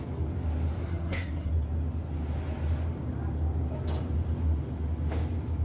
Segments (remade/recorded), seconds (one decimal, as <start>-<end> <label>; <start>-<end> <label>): 0.0-0.8 recorded; 0.8-1.5 remade; 1.5-5.6 recorded

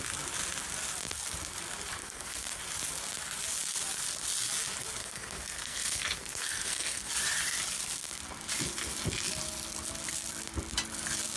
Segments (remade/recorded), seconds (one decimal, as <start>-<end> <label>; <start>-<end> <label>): 0.0-2.0 recorded; 2.0-2.6 remade; 2.6-5.0 recorded; 5.0-7.1 remade; 7.1-11.4 recorded

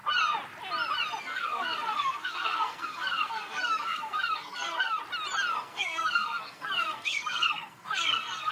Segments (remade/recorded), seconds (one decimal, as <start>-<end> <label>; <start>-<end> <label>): 0.0-1.2 recorded; 1.2-5.0 remade; 5.0-5.5 recorded; 5.5-8.5 remade